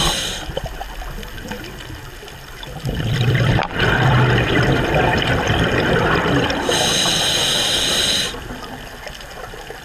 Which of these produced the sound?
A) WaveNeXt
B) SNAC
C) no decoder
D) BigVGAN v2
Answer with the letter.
D